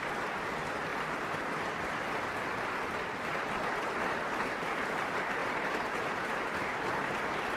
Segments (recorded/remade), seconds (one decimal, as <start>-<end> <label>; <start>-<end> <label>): 0.0-7.6 recorded